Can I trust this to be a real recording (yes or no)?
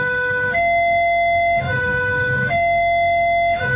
no